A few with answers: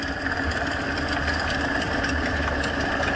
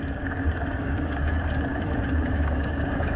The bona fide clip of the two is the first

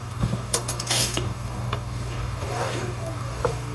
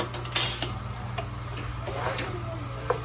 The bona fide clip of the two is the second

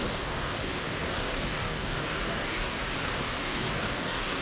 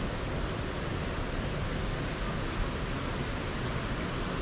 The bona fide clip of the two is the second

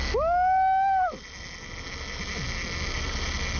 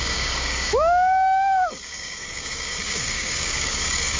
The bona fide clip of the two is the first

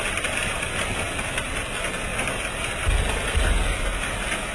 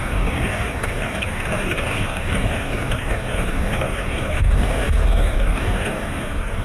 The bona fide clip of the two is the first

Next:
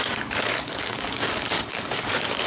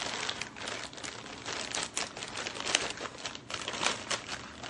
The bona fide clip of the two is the second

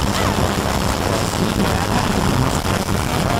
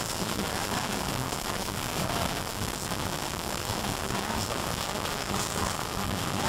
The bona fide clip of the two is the first